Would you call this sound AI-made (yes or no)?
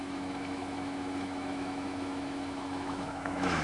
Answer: yes